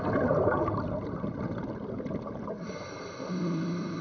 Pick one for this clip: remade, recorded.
recorded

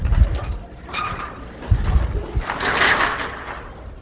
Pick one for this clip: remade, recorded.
recorded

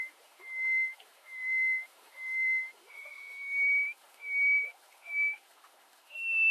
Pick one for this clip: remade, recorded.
remade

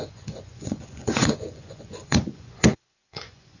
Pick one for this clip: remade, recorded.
remade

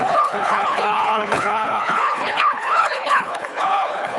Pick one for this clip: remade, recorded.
remade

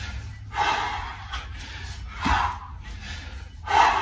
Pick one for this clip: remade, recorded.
recorded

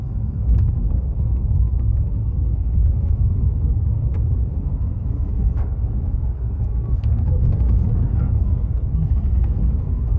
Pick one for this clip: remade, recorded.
remade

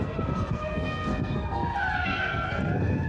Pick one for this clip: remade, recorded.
remade